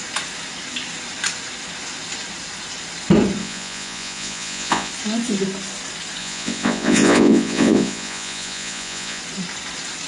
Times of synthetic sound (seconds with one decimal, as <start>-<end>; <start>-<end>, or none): 3.4-4.9; 6.2-9.2